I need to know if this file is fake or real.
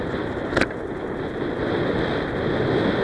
real